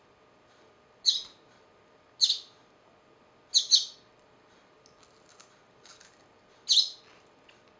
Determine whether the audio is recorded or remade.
recorded